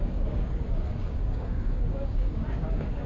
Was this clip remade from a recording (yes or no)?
yes